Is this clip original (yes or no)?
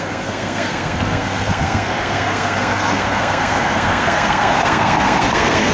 no